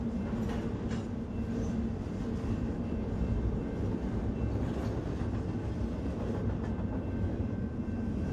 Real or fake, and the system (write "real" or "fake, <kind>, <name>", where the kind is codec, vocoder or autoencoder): real